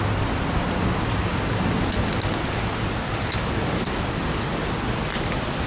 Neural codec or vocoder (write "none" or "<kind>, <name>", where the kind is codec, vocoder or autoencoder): none